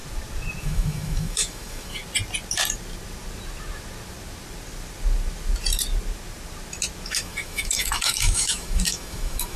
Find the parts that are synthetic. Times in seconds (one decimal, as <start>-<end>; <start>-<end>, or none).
0.6-2.0; 7.1-9.6